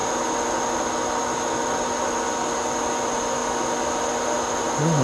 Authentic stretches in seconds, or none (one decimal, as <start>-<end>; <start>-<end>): 0.0-5.0